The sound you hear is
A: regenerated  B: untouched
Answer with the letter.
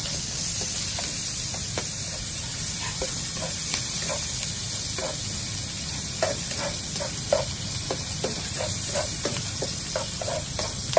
B